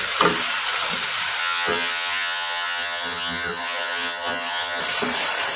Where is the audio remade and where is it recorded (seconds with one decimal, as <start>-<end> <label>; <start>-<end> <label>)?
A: 0.0-1.4 recorded; 1.4-4.8 remade; 4.8-5.6 recorded